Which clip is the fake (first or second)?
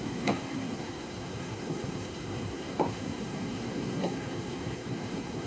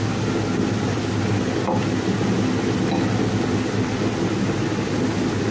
first